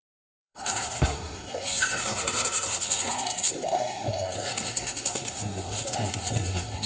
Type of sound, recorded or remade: remade